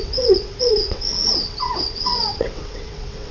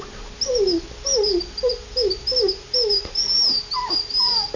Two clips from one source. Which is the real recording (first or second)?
second